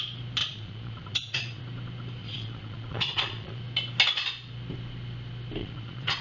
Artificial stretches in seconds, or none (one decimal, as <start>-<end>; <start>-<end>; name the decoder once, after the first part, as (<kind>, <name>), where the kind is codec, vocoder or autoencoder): 0.4-1.6 (vocoder, Vocos); 2.2-3.6; 5.6-6.2